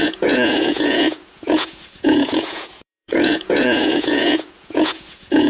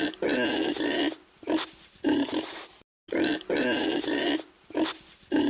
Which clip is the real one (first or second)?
second